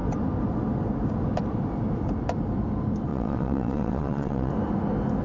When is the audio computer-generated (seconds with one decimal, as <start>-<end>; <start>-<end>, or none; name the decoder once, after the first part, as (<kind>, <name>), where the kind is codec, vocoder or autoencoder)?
3.1-4.5 (vocoder, WaveNeXt)